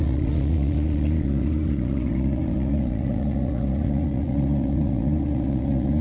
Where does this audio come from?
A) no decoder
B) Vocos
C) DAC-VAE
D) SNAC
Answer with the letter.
B